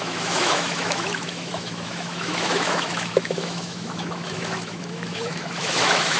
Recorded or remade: remade